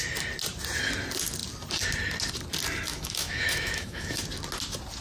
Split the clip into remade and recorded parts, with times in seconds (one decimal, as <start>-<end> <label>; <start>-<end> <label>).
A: 0.0-2.9 recorded; 2.9-4.2 remade; 4.2-5.0 recorded

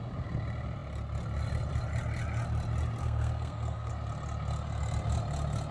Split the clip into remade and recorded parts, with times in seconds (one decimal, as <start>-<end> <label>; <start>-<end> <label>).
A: 0.0-3.0 recorded; 3.0-3.9 remade; 3.9-5.7 recorded

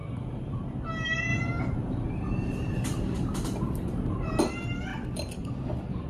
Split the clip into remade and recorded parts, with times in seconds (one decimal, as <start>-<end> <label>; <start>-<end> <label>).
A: 0.0-0.6 remade; 0.6-1.3 recorded; 1.3-4.4 remade; 4.4-4.9 recorded; 4.9-5.5 remade; 5.5-6.1 recorded

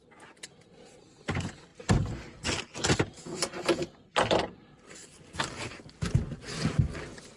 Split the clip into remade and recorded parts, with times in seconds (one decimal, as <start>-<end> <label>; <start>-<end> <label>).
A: 0.0-7.4 recorded

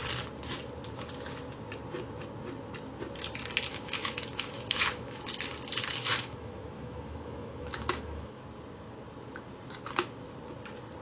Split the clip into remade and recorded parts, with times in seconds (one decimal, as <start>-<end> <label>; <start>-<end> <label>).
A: 0.0-3.7 recorded; 3.7-5.3 remade; 5.3-6.1 recorded; 6.1-8.4 remade; 8.4-11.0 recorded

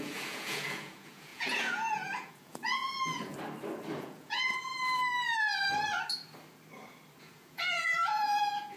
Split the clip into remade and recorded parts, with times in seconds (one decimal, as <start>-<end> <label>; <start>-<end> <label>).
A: 0.0-3.3 remade; 3.3-4.0 recorded; 4.0-4.7 remade; 4.7-7.2 recorded; 7.2-8.8 remade

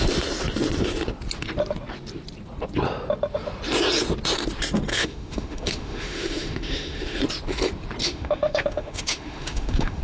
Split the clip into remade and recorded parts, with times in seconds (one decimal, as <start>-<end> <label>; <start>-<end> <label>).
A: 0.0-4.9 recorded; 4.9-7.2 remade; 7.2-8.0 recorded; 8.0-10.0 remade